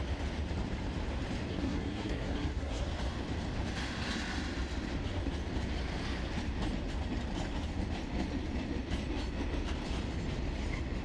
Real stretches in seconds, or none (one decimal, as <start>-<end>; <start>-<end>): 0.0-1.5; 2.8-11.0